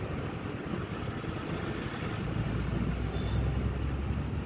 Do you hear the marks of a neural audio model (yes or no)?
no